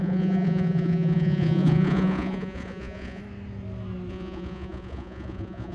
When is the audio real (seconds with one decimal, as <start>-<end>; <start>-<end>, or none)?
3.2-4.1